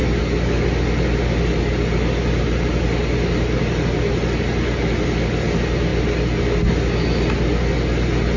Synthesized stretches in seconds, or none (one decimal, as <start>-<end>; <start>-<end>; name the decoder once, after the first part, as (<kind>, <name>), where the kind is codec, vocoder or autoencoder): none